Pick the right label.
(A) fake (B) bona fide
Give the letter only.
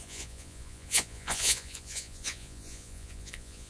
A